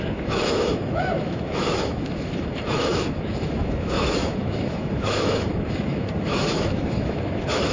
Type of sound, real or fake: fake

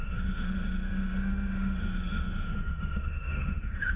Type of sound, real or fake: fake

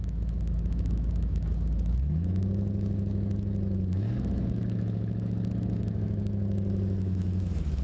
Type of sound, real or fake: fake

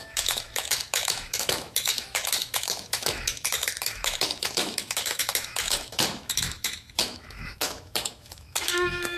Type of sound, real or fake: fake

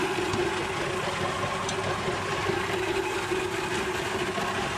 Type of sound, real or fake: real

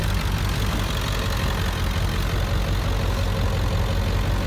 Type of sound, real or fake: real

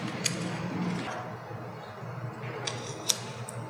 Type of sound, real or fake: real